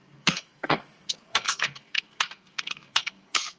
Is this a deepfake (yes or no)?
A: yes